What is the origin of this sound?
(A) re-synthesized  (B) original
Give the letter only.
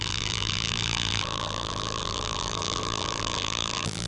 A